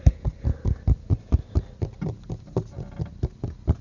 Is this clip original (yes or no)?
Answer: yes